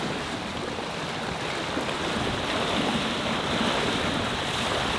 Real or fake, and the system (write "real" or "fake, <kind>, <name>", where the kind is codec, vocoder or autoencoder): real